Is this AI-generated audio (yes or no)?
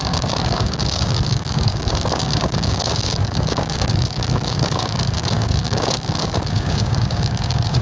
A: yes